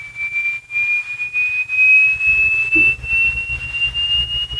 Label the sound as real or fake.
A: real